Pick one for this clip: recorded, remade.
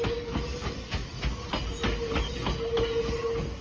recorded